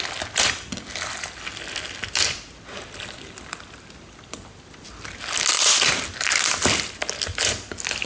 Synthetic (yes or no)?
no